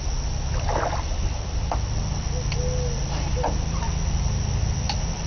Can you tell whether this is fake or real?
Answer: real